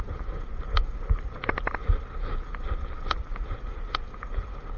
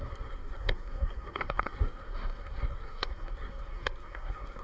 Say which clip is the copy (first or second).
second